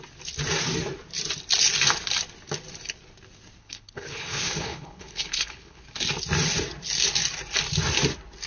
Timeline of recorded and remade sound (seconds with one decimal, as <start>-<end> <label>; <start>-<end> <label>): 0.0-3.6 recorded; 3.6-5.8 remade; 5.8-8.5 recorded